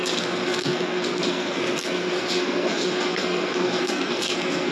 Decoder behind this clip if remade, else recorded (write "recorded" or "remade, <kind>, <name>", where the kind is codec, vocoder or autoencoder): remade, codec, SNAC